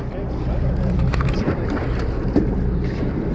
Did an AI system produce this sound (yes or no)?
no